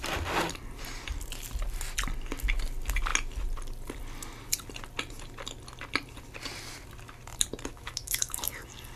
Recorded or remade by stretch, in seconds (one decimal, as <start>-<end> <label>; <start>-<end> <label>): 0.0-7.7 recorded; 7.7-8.3 remade; 8.3-9.0 recorded